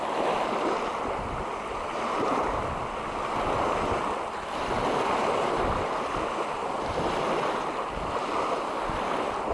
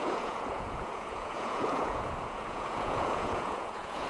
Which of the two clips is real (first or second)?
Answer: first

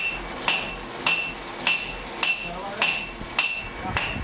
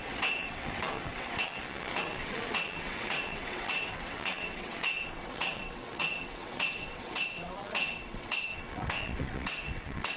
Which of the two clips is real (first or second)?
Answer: first